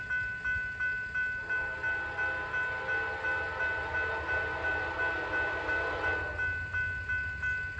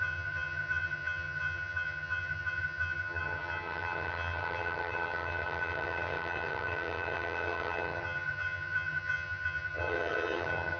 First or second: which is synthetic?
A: second